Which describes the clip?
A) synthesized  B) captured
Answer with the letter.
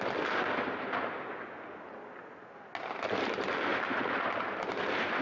B